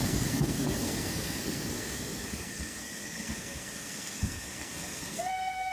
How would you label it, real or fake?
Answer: fake